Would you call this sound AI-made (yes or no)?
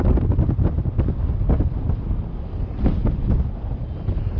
no